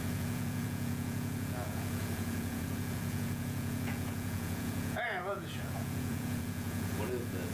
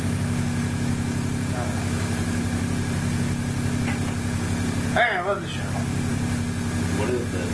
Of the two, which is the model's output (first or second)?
first